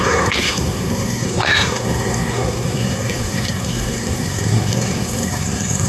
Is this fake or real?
fake